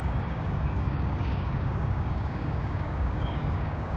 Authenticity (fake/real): fake